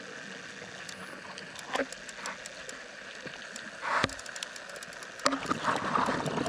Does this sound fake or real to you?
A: real